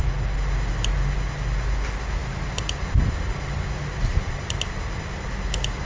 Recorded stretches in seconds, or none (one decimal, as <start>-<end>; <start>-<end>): 0.0-5.8